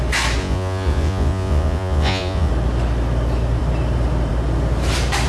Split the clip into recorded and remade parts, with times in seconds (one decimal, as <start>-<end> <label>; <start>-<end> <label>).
0.0-0.4 recorded; 0.4-2.5 remade; 2.5-5.3 recorded